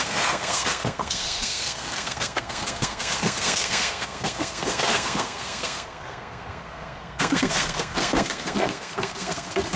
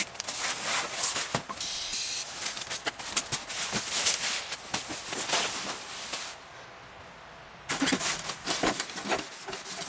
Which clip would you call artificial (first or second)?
first